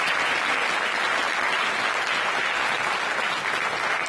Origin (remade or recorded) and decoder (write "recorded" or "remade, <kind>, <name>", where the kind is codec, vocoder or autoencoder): recorded